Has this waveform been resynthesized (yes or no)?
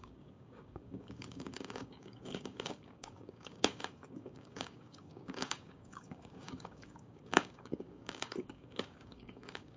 yes